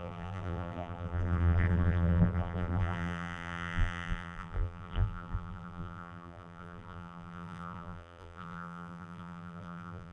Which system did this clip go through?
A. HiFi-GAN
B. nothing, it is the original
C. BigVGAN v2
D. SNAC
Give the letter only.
C